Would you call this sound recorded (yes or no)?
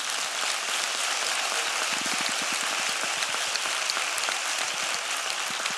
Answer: yes